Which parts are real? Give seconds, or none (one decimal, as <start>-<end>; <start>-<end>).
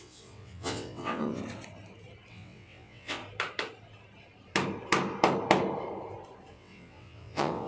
1.4-2.3; 3.2-6.5